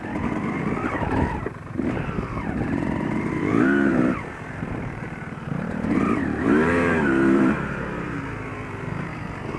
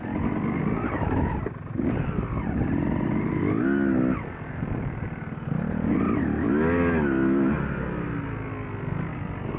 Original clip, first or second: second